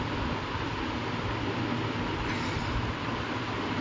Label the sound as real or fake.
real